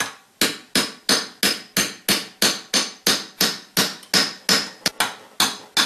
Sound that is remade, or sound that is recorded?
recorded